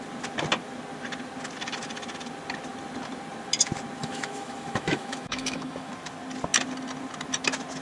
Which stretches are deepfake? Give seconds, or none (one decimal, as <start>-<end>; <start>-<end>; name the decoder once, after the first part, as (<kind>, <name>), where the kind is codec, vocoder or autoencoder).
4.0-5.9 (autoencoder, DAC-VAE)